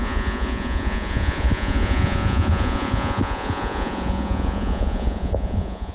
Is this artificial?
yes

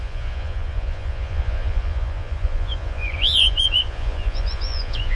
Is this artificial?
yes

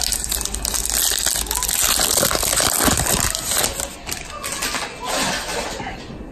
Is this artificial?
no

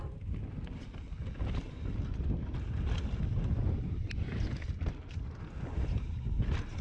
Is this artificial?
no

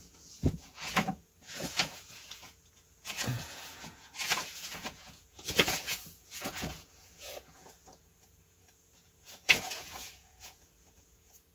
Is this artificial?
yes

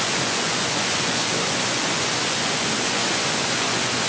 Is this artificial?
yes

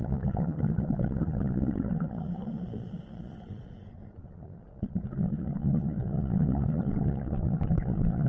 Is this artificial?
yes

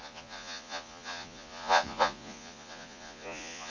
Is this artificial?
yes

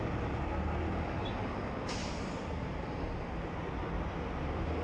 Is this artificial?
no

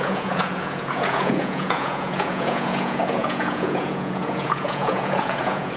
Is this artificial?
yes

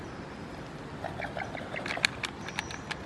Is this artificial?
no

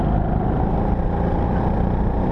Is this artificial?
no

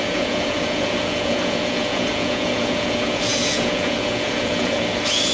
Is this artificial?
yes